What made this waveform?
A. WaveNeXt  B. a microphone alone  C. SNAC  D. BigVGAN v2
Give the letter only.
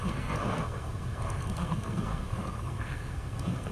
C